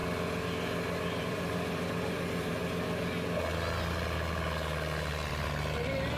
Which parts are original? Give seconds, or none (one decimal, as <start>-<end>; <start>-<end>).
0.0-1.2; 2.6-5.3